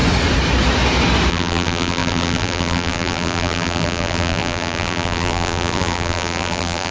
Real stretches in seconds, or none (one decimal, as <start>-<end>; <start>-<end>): 0.0-1.3